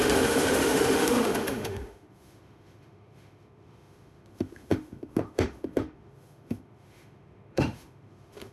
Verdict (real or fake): fake